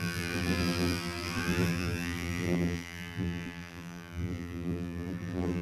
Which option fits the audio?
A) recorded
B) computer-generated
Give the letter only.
B